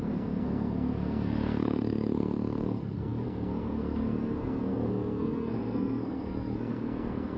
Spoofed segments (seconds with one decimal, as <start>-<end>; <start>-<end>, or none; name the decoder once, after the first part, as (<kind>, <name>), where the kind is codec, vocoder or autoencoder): 0.0-7.4 (codec, SNAC)